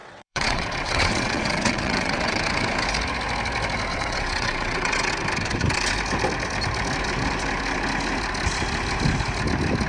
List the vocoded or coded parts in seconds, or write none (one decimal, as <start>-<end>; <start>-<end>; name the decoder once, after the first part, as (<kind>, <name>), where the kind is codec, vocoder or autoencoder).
0.0-2.4 (vocoder, WaveNeXt); 3.9-5.1